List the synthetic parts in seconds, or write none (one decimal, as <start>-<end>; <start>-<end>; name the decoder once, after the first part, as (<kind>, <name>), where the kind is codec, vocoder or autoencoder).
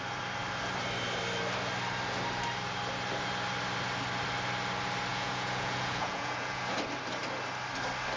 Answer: 5.1-6.6 (vocoder, Vocos)